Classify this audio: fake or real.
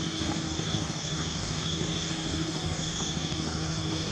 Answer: fake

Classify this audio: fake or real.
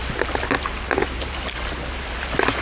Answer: real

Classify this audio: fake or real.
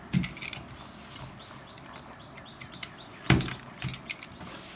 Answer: real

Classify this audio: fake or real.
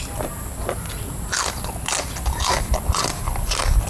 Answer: real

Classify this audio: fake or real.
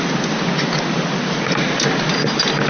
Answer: real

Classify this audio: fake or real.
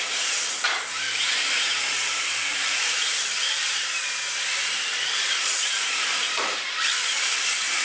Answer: fake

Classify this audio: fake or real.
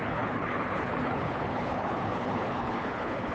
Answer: fake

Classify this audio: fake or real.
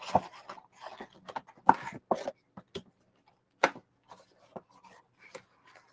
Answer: real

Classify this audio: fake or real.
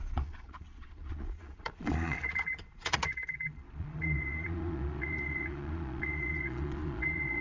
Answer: fake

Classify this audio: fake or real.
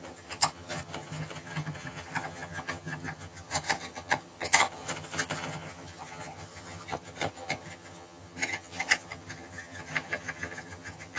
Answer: fake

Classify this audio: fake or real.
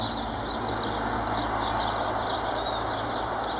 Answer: real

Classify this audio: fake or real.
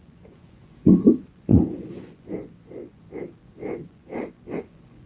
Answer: fake